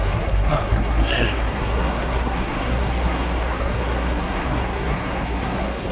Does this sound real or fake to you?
fake